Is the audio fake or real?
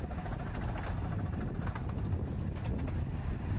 real